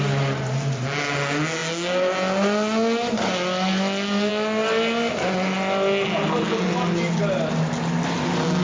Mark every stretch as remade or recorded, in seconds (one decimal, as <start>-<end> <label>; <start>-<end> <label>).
0.0-8.6 recorded